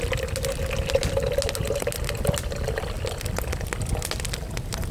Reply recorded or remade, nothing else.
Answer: recorded